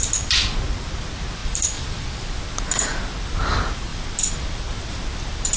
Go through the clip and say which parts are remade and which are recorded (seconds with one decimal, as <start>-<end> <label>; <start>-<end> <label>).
0.0-1.4 recorded; 1.4-2.4 remade; 2.4-3.9 recorded; 3.9-4.6 remade; 4.6-5.6 recorded